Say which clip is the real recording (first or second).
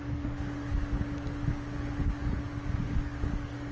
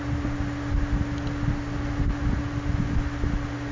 second